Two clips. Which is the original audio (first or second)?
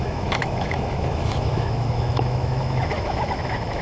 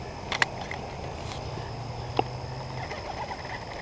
second